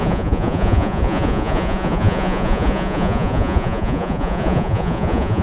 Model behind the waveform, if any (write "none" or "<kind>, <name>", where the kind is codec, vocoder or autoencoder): vocoder, Vocos